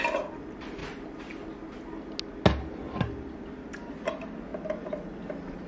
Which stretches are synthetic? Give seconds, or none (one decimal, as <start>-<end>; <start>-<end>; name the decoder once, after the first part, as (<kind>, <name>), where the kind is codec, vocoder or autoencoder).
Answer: 0.0-0.8 (vocoder, BigVGAN v2); 3.4-4.5